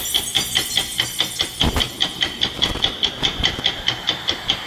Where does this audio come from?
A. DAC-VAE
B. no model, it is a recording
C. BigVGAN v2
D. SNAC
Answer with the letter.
B